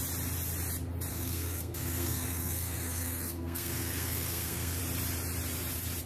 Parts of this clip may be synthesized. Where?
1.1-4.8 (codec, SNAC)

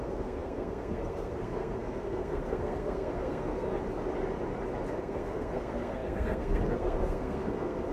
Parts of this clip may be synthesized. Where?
0.0-3.7 (codec, SNAC); 5.0-7.9

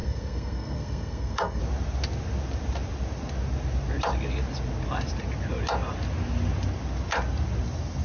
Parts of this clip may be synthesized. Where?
0.0-1.6 (codec, SNAC)

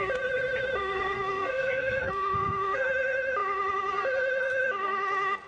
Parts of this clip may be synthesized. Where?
0.8-2.8 (codec, SNAC)

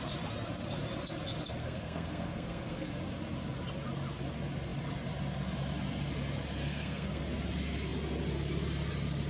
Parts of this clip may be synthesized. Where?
1.6-2.9 (codec, SNAC); 6.7-7.2

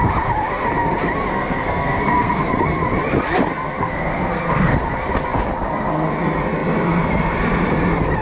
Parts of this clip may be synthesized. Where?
1.3-2.5 (codec, SNAC); 3.8-4.8

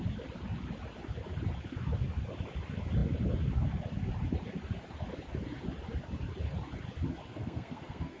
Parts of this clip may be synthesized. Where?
7.3-8.2 (codec, SNAC)